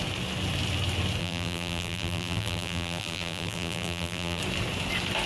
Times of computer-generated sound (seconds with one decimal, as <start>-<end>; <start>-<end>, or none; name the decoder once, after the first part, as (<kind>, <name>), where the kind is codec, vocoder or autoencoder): 1.2-4.4 (vocoder, BigVGAN v2)